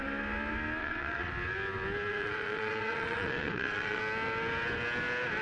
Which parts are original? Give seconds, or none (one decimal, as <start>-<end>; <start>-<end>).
0.0-0.8; 1.3-2.1; 4.0-5.4